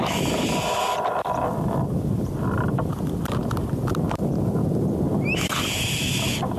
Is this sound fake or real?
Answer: real